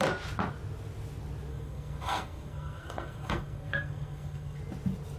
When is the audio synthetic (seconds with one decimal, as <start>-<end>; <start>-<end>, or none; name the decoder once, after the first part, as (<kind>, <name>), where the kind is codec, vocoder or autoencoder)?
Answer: 1.5-4.6 (codec, SNAC)